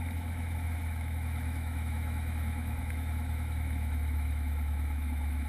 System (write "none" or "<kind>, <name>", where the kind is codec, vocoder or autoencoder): autoencoder, DAC-VAE